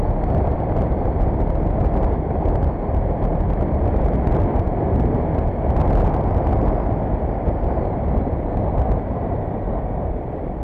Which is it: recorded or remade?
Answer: recorded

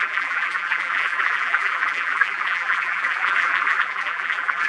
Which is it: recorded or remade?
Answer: remade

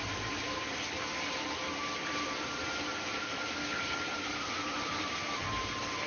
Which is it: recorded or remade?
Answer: remade